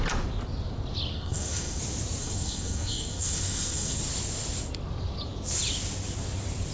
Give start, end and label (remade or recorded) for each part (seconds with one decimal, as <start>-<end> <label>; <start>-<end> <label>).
0.0-1.1 recorded; 1.1-1.8 remade; 1.8-2.2 recorded; 2.2-4.0 remade; 4.0-6.7 recorded